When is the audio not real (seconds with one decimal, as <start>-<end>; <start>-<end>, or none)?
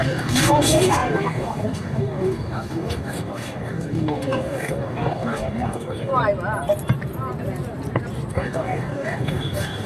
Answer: 0.0-6.1; 8.3-9.9